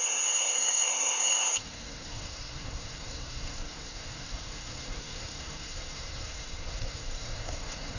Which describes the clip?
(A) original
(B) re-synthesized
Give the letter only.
B